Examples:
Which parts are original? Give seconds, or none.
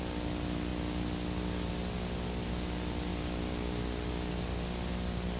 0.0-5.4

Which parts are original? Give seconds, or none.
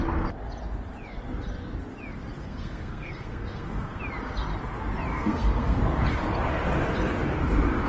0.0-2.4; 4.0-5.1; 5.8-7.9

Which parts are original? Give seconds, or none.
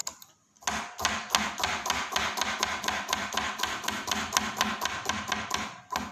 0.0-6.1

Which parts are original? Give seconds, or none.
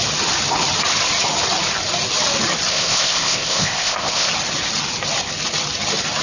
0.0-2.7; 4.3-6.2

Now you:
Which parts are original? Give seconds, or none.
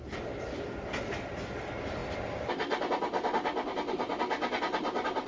0.0-5.3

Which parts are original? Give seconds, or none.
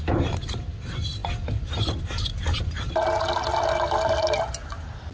0.0-5.1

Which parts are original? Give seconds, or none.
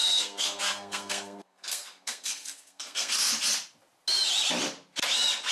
3.3-5.5